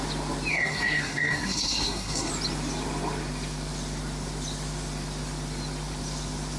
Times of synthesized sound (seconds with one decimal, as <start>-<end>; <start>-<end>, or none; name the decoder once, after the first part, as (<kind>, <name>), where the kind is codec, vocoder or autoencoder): 0.5-2.3 (codec, SNAC)